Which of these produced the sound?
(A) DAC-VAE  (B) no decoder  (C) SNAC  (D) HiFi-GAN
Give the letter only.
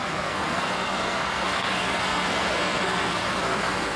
C